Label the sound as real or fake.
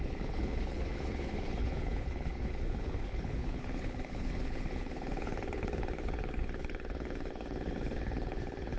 fake